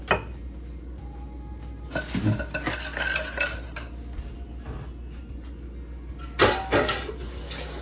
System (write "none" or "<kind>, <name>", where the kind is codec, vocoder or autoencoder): none